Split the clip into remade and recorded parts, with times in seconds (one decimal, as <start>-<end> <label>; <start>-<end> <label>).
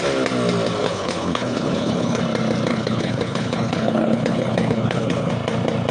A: 0.0-0.8 recorded; 0.8-2.2 remade; 2.2-2.7 recorded; 2.7-5.3 remade; 5.3-5.9 recorded